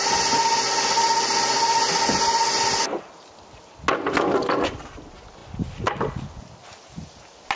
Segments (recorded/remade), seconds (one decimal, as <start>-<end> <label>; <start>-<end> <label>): 0.0-7.6 recorded